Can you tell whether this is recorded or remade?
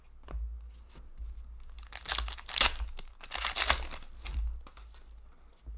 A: recorded